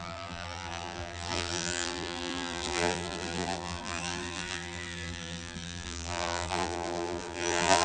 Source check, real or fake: fake